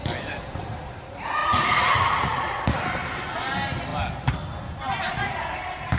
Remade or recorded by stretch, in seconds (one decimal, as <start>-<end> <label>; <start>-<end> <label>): 0.0-1.4 recorded; 1.4-2.6 remade; 2.6-6.0 recorded